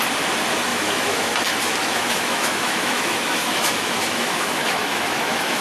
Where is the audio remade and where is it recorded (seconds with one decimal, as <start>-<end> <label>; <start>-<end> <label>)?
0.0-0.7 recorded; 0.7-1.3 remade; 1.3-1.8 recorded; 1.8-5.6 remade